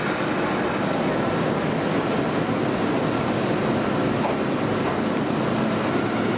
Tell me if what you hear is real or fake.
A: real